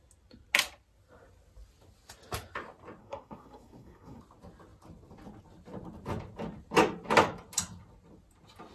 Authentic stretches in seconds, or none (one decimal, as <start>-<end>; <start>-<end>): 0.0-3.0; 4.2-8.7